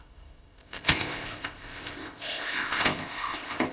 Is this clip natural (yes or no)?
no